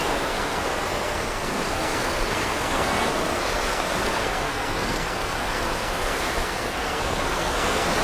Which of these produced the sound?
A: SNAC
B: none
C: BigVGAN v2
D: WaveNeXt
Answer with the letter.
A